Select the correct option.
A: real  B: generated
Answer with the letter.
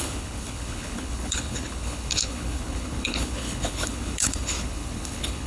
B